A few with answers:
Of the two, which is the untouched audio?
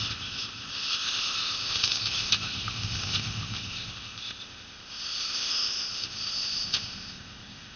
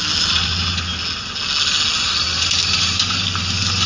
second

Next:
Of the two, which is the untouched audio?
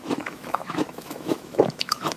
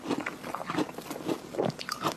second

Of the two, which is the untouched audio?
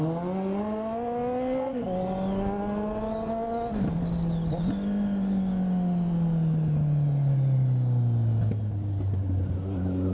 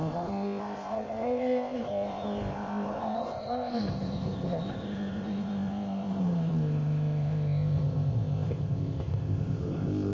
first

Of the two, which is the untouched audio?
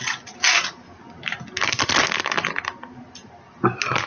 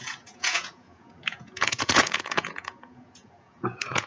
first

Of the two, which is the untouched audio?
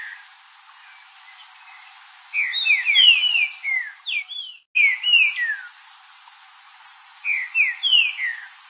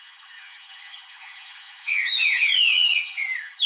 first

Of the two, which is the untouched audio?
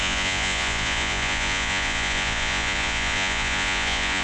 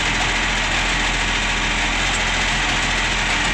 second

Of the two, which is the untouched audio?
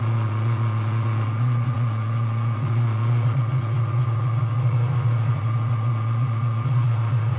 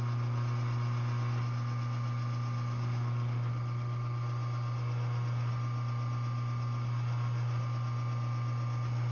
second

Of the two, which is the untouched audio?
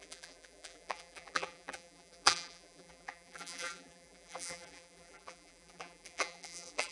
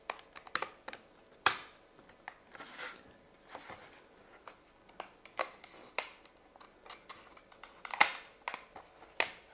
second